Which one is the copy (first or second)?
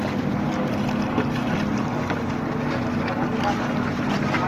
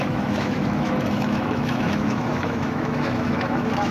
second